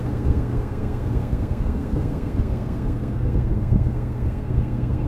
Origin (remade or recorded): remade